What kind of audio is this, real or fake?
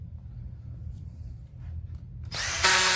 fake